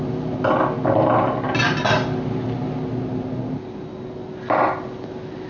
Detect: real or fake real